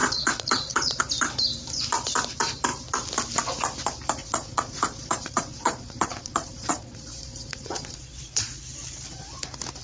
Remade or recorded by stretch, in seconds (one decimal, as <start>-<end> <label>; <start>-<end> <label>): 0.0-1.0 remade; 1.0-4.2 recorded; 4.2-8.6 remade; 8.6-9.8 recorded